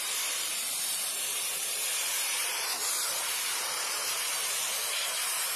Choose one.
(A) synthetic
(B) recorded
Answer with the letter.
A